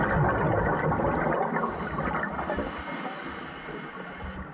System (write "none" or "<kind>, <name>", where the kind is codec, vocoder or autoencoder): none